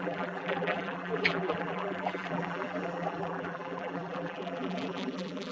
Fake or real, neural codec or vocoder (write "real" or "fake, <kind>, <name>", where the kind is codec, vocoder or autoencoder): fake, vocoder, BigVGAN v2